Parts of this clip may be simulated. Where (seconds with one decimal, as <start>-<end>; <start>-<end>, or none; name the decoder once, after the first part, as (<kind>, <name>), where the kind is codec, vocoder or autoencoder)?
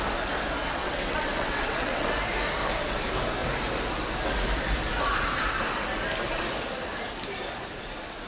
0.8-2.1 (vocoder, WaveNeXt)